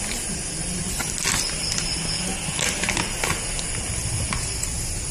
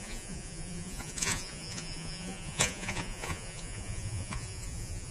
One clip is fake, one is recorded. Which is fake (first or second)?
second